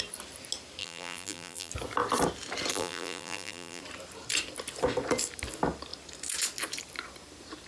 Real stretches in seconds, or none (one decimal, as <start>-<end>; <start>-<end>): 0.0-0.8; 1.7-2.7; 3.8-7.7